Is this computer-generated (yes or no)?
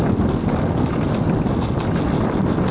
no